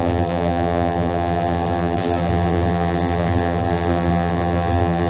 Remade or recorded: remade